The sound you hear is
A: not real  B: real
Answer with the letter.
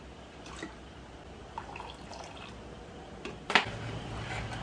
B